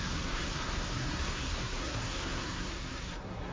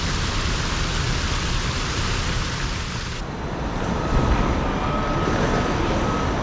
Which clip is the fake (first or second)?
first